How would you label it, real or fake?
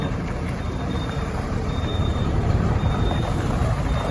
fake